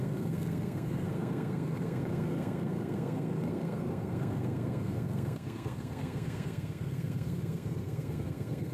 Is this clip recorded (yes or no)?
no